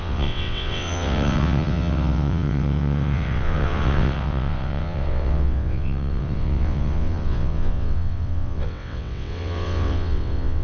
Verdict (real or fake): fake